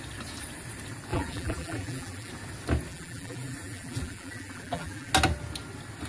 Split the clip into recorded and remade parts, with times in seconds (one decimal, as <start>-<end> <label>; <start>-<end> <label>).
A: 0.0-1.1 recorded; 1.1-2.3 remade; 2.3-2.9 recorded; 2.9-5.1 remade; 5.1-6.1 recorded